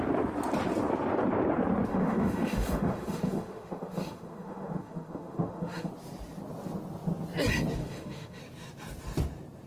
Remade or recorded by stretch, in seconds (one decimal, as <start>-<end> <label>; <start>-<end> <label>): 0.0-1.9 recorded; 1.9-5.9 remade; 5.9-7.8 recorded; 7.8-8.4 remade; 8.4-9.7 recorded